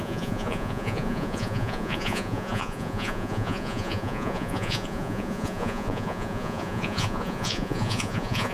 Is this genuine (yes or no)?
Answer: no